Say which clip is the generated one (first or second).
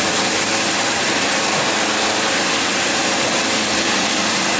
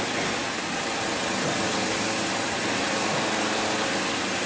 first